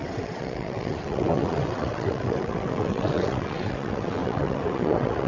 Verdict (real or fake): fake